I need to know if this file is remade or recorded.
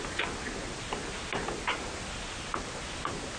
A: recorded